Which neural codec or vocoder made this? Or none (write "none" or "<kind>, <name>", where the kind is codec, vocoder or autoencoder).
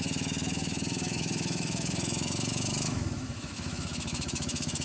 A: autoencoder, DAC-VAE